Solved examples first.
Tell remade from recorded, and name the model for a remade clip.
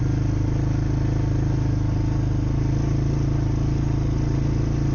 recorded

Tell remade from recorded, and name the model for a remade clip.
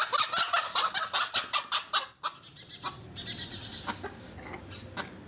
recorded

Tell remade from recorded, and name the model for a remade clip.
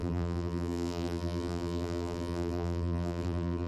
remade, vocoder, BigVGAN v2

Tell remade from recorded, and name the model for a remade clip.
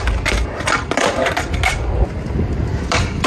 recorded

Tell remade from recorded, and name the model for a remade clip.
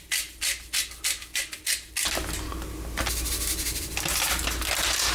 recorded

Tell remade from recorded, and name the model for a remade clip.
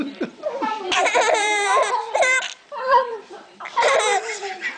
remade, vocoder, BigVGAN v2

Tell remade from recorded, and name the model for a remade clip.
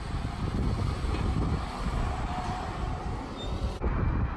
recorded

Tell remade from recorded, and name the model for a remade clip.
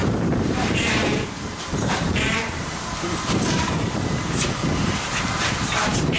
remade, vocoder, BigVGAN v2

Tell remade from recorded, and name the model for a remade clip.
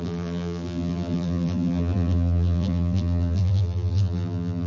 remade, vocoder, BigVGAN v2